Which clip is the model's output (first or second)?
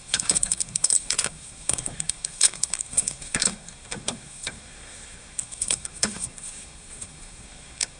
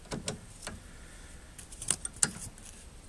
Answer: first